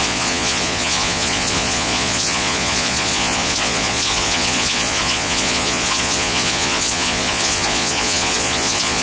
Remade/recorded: remade